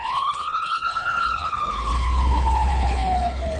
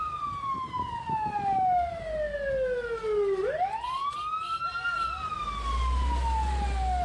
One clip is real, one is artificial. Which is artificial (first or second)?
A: first